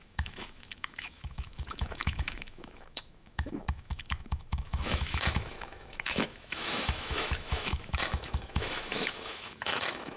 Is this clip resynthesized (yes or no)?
yes